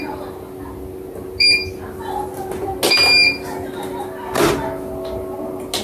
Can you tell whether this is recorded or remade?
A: recorded